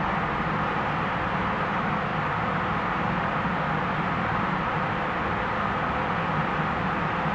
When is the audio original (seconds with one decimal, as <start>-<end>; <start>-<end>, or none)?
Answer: 0.0-2.1; 4.9-7.3